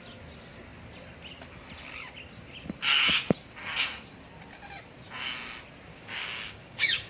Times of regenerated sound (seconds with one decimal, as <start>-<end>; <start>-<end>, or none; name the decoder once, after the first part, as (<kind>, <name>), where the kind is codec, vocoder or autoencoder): 5.9-7.1 (codec, DAC)